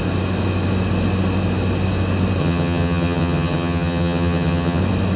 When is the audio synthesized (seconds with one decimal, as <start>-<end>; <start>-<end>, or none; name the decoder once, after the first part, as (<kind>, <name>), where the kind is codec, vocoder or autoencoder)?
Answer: 2.4-4.8 (vocoder, HiFi-GAN)